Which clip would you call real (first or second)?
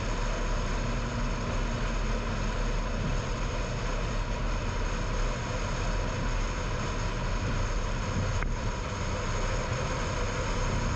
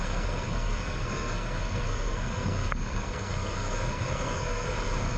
first